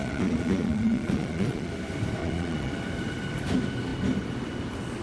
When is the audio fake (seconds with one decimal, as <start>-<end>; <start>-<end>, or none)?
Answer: 0.0-1.7; 2.2-2.7